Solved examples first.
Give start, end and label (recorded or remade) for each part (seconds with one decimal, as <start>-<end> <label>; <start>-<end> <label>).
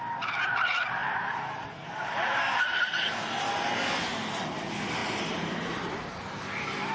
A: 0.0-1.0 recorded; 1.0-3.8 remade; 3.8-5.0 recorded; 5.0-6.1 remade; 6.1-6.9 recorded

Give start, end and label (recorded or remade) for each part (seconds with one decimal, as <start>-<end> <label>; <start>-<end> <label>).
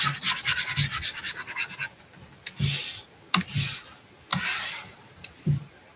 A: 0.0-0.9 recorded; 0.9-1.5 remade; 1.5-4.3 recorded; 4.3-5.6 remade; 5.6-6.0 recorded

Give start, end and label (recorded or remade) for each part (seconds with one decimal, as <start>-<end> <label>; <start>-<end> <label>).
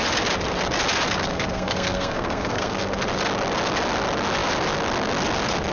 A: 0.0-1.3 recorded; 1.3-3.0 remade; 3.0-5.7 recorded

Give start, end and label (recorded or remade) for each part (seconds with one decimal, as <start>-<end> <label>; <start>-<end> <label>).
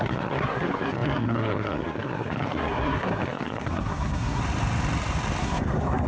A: 0.0-4.4 remade; 4.4-5.4 recorded; 5.4-6.1 remade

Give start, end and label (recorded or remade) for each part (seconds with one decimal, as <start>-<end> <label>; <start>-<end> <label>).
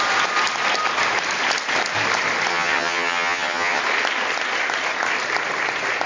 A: 0.0-2.5 recorded; 2.5-3.8 remade; 3.8-6.1 recorded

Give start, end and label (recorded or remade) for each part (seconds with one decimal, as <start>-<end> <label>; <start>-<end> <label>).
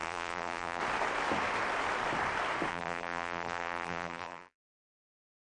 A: 0.0-0.8 remade; 0.8-2.7 recorded; 2.7-4.7 remade; 4.7-5.5 recorded